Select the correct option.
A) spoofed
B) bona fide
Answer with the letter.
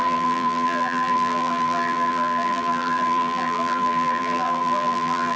A